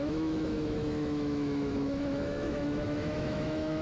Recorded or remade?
remade